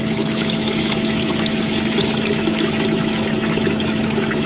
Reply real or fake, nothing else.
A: fake